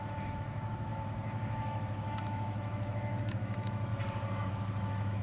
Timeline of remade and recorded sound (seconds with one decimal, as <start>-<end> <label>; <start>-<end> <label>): 0.0-3.9 remade; 3.9-4.5 recorded; 4.5-5.2 remade